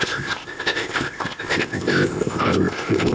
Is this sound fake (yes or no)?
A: yes